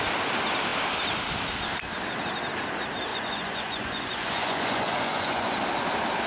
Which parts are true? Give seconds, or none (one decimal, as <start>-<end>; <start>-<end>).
0.0-3.1; 5.5-6.3